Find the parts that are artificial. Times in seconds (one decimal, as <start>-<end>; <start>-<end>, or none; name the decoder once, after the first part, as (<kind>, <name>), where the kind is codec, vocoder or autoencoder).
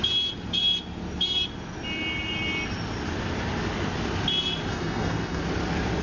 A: 4.7-5.4 (codec, DAC)